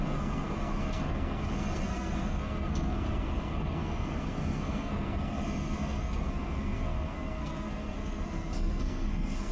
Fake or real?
fake